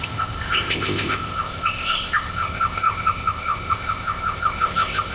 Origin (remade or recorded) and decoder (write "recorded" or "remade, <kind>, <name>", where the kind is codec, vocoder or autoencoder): remade, codec, ZipCodec